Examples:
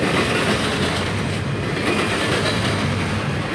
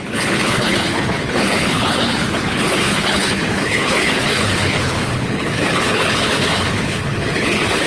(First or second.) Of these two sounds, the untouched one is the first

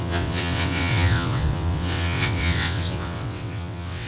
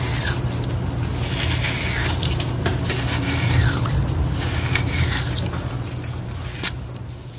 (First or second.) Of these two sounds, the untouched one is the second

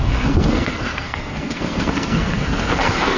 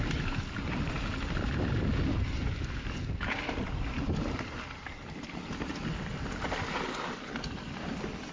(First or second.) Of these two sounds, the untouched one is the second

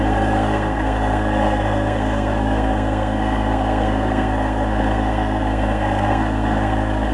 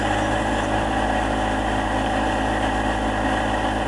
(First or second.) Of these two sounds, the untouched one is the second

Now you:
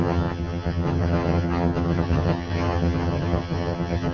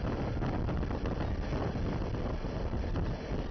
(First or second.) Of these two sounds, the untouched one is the second